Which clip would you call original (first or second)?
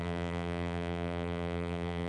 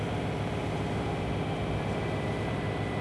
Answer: second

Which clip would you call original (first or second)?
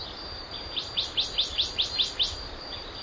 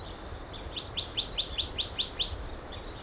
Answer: second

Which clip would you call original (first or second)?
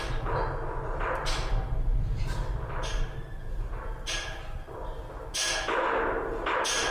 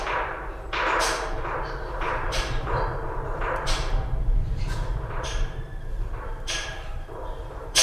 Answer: first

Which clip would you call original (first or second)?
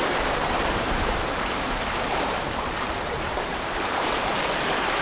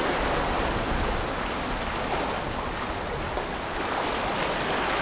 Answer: second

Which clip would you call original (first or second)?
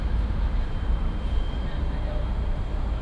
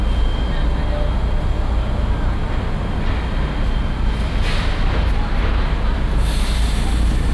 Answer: second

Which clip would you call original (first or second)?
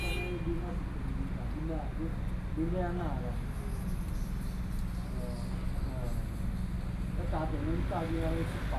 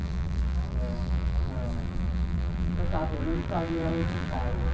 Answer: first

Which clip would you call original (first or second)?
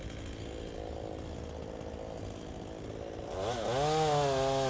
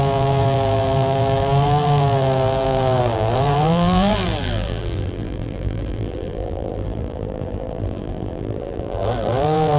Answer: first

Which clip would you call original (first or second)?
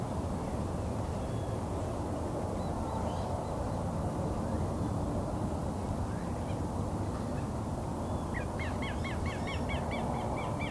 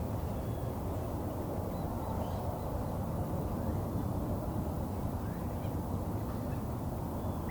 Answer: first